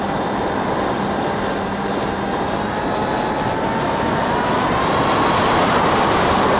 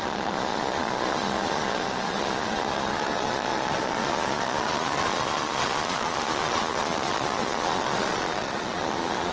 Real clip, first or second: first